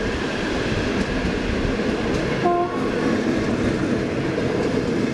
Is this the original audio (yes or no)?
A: yes